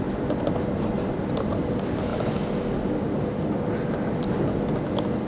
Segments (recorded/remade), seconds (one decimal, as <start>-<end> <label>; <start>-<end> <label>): 0.0-5.3 recorded